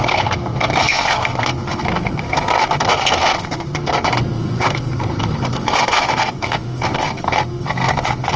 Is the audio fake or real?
fake